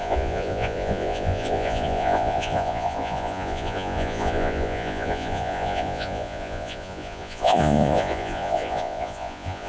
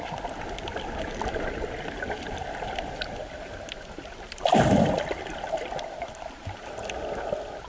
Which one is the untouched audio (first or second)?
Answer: second